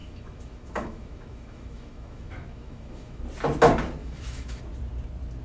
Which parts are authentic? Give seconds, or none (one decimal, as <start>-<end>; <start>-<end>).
3.2-4.0; 4.6-5.4